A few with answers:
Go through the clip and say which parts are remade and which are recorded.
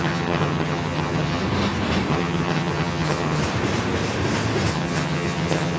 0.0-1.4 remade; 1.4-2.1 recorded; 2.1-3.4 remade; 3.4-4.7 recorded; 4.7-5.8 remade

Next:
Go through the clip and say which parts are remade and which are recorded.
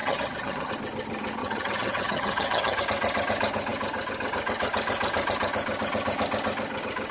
0.0-0.7 remade; 0.7-1.4 recorded; 1.4-2.8 remade; 2.8-7.1 recorded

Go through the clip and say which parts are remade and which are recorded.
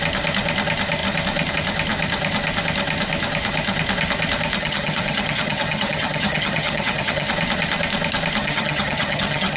0.0-4.6 recorded; 4.6-7.3 remade; 7.3-8.4 recorded; 8.4-9.6 remade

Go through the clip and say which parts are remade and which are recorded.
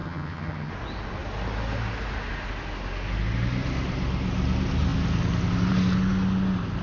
0.0-0.7 remade; 0.7-6.8 recorded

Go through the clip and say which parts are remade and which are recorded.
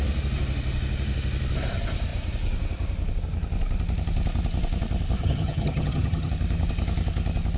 0.0-5.2 recorded; 5.2-6.3 remade; 6.3-7.6 recorded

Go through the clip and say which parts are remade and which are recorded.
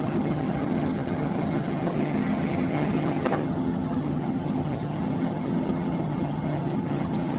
0.0-7.4 remade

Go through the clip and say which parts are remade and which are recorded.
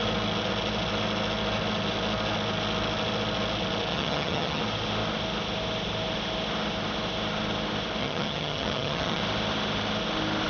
0.0-3.9 recorded; 3.9-4.6 remade; 4.6-8.0 recorded; 8.0-9.2 remade; 9.2-10.5 recorded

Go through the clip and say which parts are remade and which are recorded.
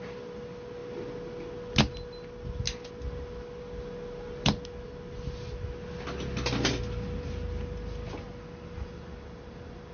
0.0-9.9 recorded